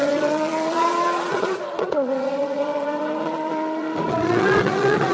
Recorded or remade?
remade